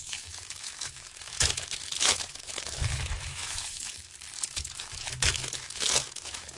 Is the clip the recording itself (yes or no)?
no